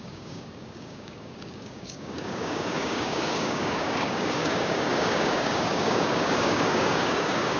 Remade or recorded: remade